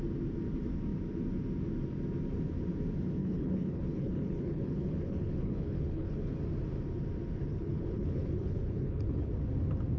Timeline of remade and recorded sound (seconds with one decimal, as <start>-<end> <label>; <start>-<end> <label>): 0.0-3.2 recorded; 3.2-6.3 remade; 6.3-7.4 recorded; 7.4-9.3 remade; 9.3-10.0 recorded